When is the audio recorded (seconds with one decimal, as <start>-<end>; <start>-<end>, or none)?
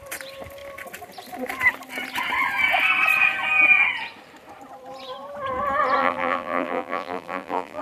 0.0-6.0